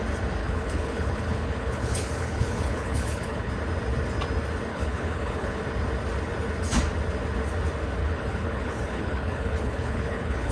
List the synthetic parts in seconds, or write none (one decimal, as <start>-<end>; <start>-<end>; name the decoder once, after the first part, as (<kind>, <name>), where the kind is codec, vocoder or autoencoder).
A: 0.4-3.5 (codec, HILCodec); 4.7-5.6; 8.0-10.5